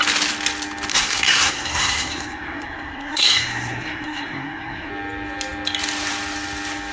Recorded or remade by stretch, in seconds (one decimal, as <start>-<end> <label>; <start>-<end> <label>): 0.0-0.9 recorded; 0.9-4.9 remade; 4.9-6.9 recorded